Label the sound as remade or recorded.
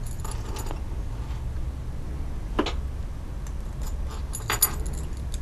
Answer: recorded